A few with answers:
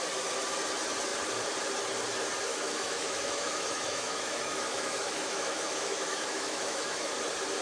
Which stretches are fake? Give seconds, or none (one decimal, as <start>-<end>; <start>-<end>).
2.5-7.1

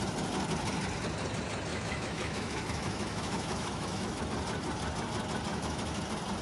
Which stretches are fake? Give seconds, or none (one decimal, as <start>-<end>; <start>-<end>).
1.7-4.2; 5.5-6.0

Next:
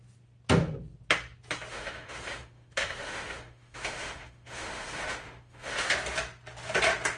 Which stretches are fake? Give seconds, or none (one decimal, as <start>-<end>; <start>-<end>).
1.7-5.9

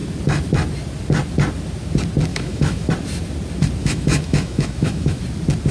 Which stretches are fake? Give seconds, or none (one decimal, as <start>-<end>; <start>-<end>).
2.3-2.9; 3.8-5.2